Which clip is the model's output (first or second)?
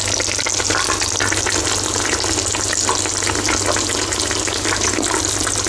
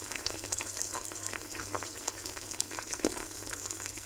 second